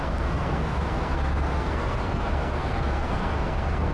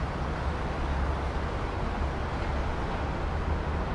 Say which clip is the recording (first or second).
second